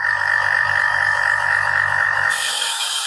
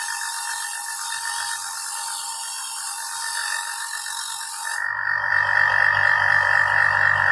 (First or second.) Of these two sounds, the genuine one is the second